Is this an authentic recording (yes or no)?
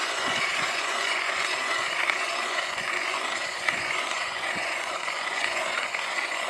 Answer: no